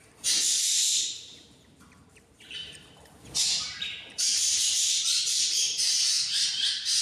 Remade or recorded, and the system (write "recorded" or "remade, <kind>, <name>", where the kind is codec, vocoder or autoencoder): remade, vocoder, BigVGAN v2